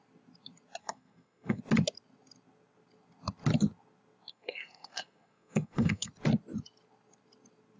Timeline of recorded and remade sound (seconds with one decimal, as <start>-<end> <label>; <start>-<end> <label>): 0.0-0.8 recorded; 0.8-1.6 remade; 1.6-4.3 recorded; 4.3-6.1 remade; 6.1-7.8 recorded